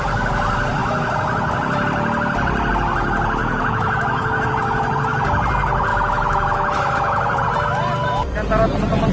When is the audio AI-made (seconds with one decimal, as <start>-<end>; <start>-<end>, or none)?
3.4-4.5; 5.9-7.4